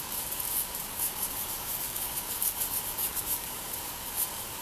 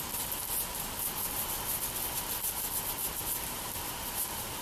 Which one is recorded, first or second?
second